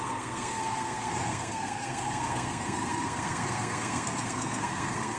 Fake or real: fake